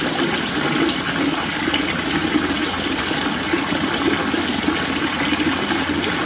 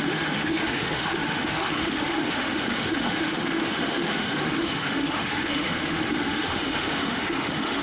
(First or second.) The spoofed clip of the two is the second